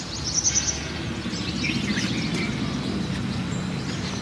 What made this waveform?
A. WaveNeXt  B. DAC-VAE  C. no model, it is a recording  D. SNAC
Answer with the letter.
C